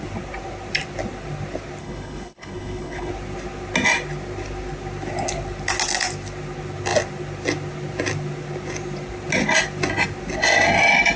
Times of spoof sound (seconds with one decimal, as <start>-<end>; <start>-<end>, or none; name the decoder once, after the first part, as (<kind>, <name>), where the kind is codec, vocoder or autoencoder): 1.8-3.1 (codec, HILCodec)